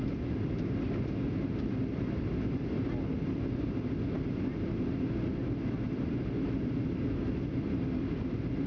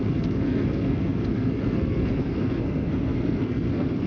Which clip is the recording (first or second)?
first